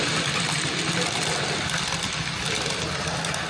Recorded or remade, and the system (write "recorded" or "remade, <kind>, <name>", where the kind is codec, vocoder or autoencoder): recorded